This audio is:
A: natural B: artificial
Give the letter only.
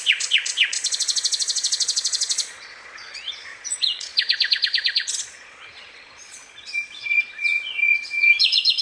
B